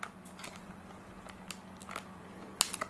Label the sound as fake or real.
real